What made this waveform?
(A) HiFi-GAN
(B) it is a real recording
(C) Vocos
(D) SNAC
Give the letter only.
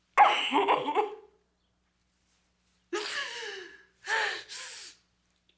B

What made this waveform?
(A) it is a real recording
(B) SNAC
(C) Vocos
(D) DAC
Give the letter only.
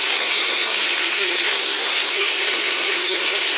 B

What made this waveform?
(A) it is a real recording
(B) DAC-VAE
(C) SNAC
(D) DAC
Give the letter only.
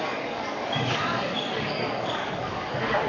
D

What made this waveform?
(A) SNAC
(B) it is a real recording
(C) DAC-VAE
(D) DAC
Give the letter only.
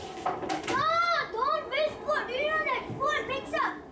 B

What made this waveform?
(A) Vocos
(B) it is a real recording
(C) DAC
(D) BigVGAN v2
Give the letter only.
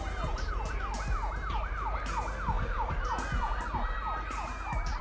B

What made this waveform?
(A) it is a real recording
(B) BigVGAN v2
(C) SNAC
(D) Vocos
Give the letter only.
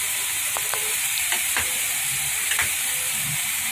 B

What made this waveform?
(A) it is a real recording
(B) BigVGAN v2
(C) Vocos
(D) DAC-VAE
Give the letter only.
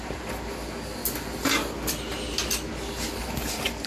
A